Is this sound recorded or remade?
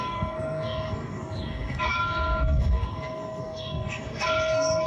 remade